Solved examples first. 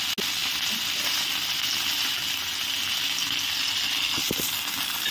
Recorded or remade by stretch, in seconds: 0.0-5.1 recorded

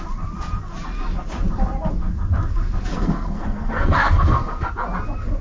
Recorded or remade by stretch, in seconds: 0.0-2.9 recorded; 2.9-4.7 remade; 4.7-5.4 recorded

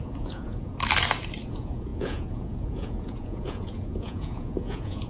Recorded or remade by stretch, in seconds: 0.0-0.7 remade; 0.7-1.5 recorded; 1.5-5.1 remade

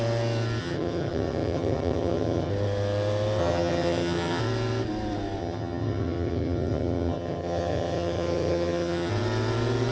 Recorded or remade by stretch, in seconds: 0.0-0.6 recorded; 0.6-2.5 remade; 2.5-3.4 recorded; 3.4-4.4 remade; 4.4-5.4 recorded; 5.4-9.1 remade; 9.1-9.9 recorded

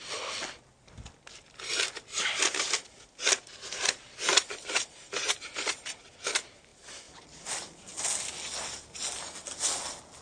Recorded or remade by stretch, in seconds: 0.0-10.2 recorded

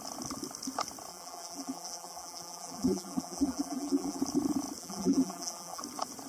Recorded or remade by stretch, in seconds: 0.0-1.1 recorded; 1.1-4.2 remade; 4.2-4.8 recorded; 4.8-5.8 remade; 5.8-6.3 recorded

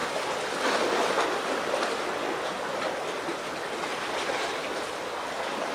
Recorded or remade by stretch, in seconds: 0.0-5.7 recorded